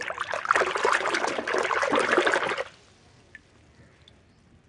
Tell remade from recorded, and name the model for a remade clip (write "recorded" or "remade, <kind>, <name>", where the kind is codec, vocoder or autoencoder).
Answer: recorded